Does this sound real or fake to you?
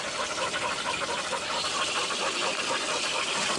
fake